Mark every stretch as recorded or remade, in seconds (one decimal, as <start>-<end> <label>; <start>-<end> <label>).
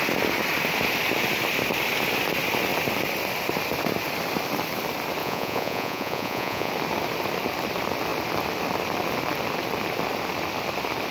0.0-5.2 recorded; 5.2-6.7 remade; 6.7-11.1 recorded